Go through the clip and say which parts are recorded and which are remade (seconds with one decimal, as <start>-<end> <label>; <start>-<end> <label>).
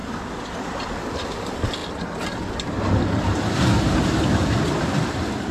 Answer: 0.0-5.5 recorded